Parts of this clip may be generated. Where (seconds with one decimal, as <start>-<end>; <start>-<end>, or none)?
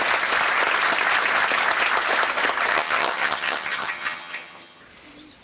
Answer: 2.7-4.8